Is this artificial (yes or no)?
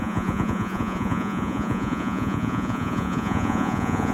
yes